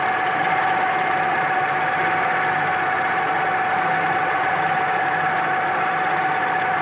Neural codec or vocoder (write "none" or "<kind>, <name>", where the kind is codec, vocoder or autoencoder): none